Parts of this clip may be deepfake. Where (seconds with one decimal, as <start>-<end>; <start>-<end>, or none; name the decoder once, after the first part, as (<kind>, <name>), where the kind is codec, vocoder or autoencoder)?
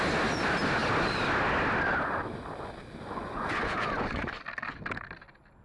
3.2-4.4 (vocoder, Vocos)